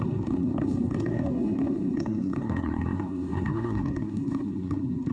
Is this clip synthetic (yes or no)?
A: yes